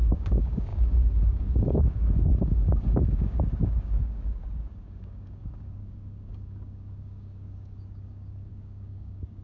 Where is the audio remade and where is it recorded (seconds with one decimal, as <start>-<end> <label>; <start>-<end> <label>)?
0.0-9.4 remade